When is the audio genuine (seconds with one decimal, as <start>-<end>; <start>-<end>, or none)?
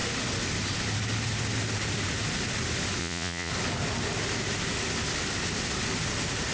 0.0-3.0; 3.5-6.5